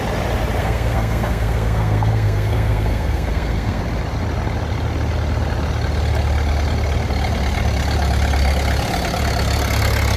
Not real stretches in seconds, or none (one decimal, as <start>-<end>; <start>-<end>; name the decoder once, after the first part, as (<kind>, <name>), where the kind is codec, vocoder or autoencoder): 0.6-3.8 (codec, SNAC)